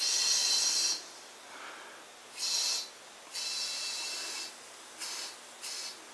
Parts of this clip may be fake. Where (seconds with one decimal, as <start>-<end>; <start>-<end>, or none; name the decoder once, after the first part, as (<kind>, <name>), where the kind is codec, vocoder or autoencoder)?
0.4-1.8 (vocoder, BigVGAN v2)